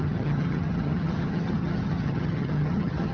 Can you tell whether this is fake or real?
fake